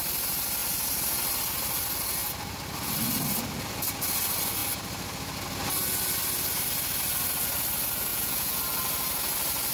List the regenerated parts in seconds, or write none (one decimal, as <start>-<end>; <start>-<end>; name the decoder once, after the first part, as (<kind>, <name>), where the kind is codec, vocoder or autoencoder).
8.1-8.6 (vocoder, Vocos)